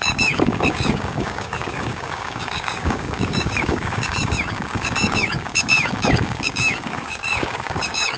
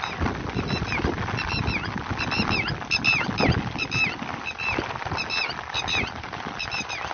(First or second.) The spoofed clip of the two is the first